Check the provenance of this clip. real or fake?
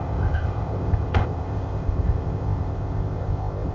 fake